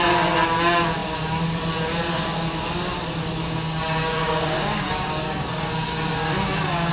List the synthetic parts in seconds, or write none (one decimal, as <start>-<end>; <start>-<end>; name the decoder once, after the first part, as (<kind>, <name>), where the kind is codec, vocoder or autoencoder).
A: 3.4-6.9 (codec, DAC)